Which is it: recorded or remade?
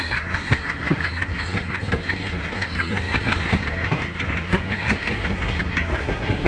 remade